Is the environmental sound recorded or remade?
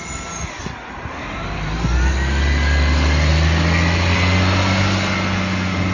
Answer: recorded